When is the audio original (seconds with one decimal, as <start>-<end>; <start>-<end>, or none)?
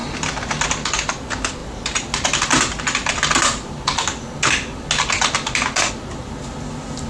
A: 0.0-7.1